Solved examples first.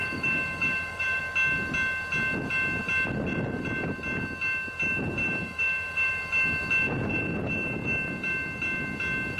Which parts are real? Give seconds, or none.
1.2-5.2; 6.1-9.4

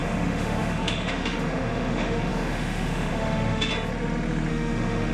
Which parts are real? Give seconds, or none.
3.7-4.5

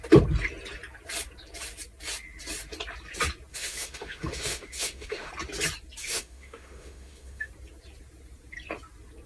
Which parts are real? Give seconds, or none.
0.0-3.5; 5.3-6.0; 7.5-9.3

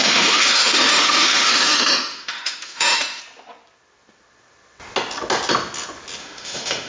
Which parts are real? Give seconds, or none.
3.2-6.2